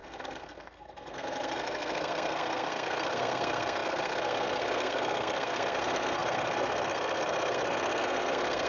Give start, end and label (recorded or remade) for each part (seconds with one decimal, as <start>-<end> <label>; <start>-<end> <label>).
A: 0.0-8.7 remade